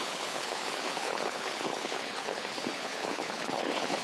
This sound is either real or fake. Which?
fake